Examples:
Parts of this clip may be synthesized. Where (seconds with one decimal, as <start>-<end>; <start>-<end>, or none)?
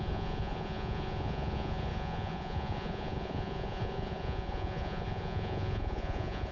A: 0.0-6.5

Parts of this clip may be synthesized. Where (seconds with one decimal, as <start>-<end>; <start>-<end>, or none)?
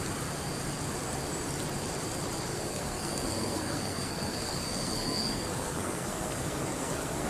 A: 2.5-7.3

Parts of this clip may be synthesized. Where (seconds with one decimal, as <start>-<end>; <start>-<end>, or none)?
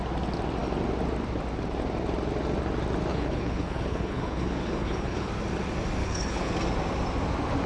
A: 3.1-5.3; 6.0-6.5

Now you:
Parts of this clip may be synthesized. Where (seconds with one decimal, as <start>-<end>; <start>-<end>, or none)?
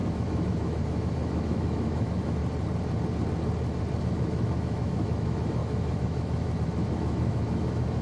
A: 0.0-2.4; 4.0-8.0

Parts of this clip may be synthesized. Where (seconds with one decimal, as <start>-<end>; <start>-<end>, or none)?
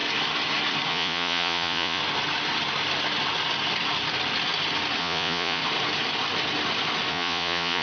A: 0.9-2.0; 5.0-5.6; 7.1-7.8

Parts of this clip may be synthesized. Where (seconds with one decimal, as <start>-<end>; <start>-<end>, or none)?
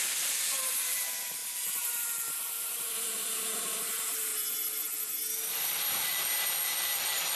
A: 0.0-4.3; 5.5-7.4